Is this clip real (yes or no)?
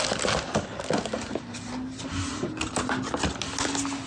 yes